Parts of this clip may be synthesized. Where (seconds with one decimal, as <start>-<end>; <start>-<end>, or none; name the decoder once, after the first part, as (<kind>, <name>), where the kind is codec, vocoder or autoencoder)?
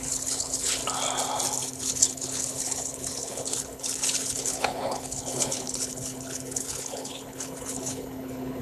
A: 0.0-0.8 (codec, HILCodec); 1.6-8.6